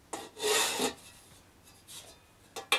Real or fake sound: real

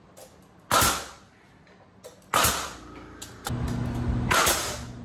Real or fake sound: real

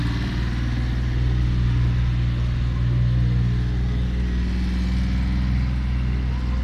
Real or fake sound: real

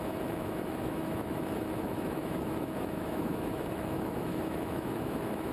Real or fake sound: fake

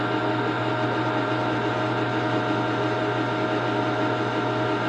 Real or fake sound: real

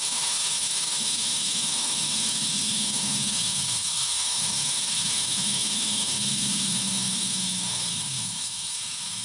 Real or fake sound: fake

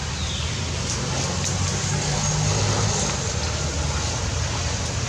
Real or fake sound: real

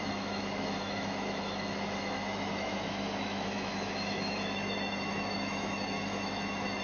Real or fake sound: fake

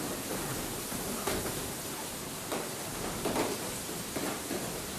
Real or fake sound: real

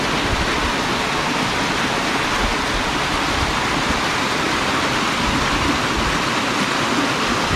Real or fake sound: real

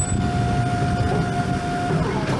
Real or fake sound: real